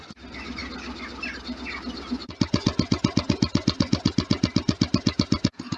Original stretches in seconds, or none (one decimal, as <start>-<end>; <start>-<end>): 0.0-5.8